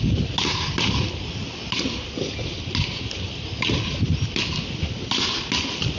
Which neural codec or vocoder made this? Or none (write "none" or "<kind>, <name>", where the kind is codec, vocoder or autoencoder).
none